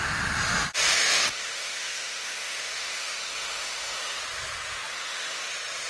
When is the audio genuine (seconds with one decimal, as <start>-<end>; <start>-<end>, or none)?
0.0-0.9; 4.2-4.9; 5.5-5.9

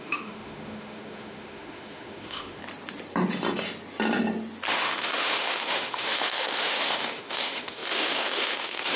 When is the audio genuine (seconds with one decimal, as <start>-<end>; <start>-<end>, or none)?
2.6-4.7

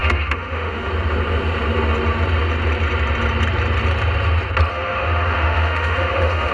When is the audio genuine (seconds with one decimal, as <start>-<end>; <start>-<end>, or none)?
0.9-4.7

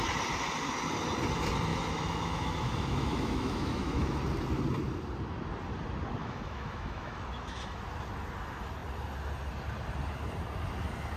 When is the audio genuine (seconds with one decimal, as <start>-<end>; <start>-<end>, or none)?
0.0-1.7; 4.2-6.2; 7.8-11.2